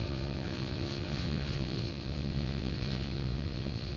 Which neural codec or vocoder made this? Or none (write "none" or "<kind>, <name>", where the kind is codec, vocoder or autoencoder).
vocoder, WaveNeXt